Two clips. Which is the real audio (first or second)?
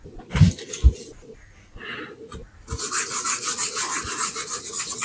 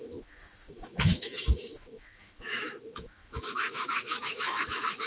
first